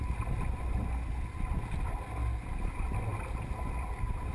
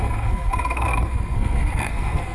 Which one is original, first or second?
first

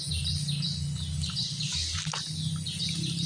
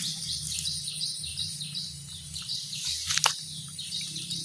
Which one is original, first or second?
first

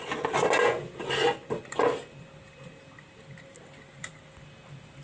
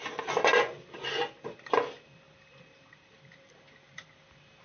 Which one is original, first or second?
first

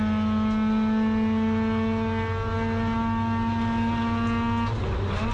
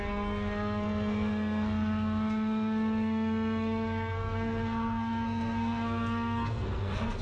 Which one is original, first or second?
first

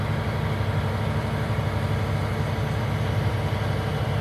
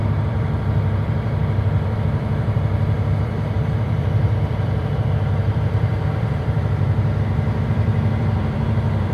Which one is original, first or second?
first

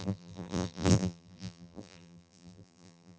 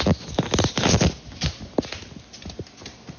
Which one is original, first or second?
second